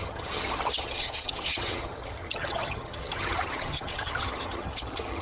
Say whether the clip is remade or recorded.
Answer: remade